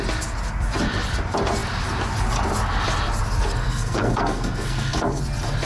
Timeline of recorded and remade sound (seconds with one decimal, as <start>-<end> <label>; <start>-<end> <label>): 0.0-3.6 recorded; 3.6-5.2 remade; 5.2-5.7 recorded